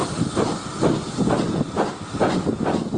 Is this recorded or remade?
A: remade